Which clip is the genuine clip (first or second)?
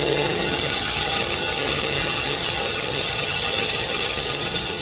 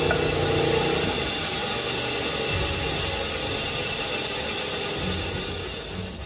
second